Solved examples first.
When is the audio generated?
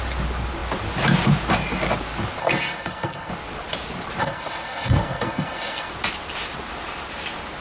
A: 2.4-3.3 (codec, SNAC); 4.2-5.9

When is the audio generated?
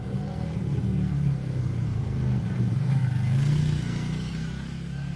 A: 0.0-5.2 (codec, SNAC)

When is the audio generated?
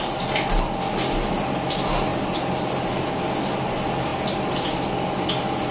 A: none